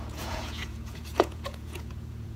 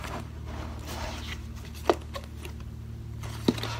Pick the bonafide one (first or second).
second